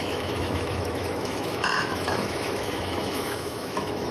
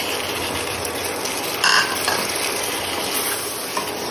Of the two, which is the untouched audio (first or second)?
second